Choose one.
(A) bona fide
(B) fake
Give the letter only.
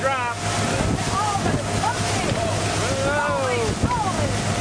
A